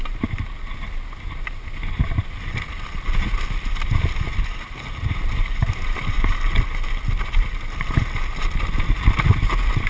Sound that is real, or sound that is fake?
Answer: real